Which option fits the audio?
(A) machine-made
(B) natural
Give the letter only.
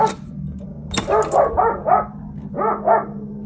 B